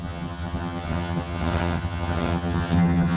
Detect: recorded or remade remade